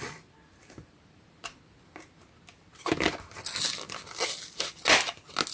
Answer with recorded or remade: recorded